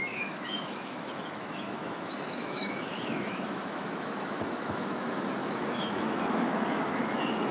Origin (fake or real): fake